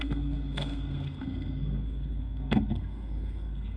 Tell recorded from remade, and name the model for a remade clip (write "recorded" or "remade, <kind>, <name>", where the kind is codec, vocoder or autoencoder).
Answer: remade, codec, SNAC